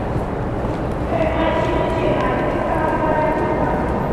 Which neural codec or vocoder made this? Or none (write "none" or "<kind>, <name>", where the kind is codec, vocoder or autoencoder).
none